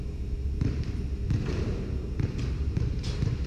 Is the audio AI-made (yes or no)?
yes